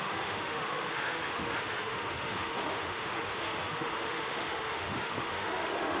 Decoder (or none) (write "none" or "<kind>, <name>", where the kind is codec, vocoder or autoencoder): autoencoder, DAC-VAE